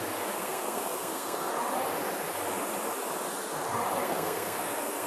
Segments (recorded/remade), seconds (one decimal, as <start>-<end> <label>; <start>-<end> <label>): 0.0-0.4 recorded; 0.4-1.5 remade; 1.5-4.0 recorded; 4.0-5.1 remade